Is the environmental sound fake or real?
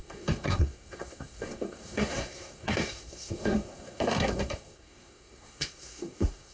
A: fake